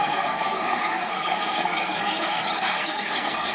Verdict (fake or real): fake